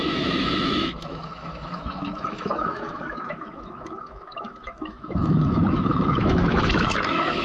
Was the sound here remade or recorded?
remade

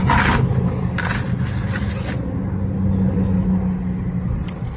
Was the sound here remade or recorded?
recorded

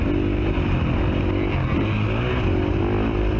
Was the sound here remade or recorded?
recorded